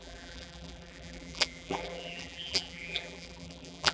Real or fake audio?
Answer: fake